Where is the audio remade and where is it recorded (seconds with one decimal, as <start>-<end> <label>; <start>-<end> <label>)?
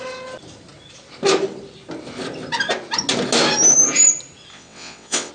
0.0-4.5 recorded; 4.5-5.3 remade